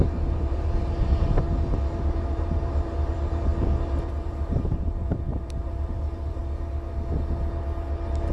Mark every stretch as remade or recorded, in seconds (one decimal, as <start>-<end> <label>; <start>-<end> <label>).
0.0-3.5 remade; 3.5-4.1 recorded; 4.1-6.4 remade; 6.4-8.3 recorded